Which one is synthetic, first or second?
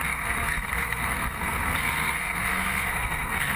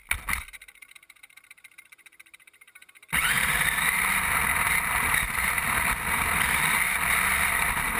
first